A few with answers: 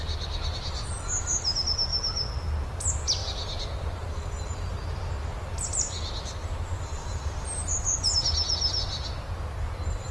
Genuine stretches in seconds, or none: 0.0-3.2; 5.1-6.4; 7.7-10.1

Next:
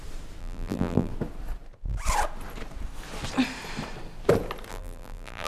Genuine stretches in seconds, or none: 0.0-0.4; 1.1-4.7

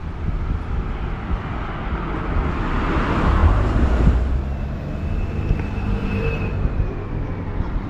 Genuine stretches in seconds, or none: 0.0-3.4; 4.4-6.0; 7.1-7.9

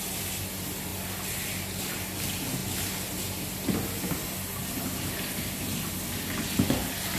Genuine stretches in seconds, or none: 0.0-7.2